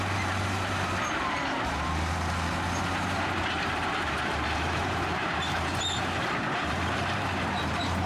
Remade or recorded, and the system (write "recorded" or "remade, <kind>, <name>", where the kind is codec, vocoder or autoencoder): remade, vocoder, BigVGAN v2